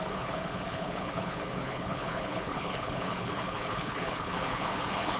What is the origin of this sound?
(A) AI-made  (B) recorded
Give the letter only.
A